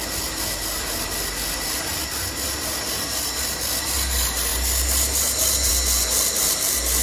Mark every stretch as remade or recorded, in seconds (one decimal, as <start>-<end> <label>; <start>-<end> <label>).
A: 0.0-7.0 recorded